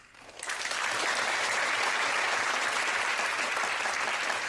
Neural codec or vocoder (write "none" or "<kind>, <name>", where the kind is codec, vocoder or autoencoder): vocoder, BigVGAN v2